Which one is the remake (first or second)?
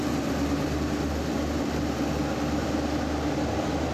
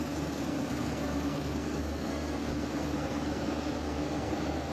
second